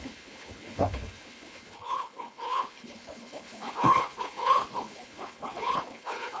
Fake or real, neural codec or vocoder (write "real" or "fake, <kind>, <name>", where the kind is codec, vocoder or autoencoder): fake, codec, HILCodec